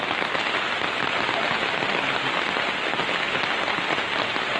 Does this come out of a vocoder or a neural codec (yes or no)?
no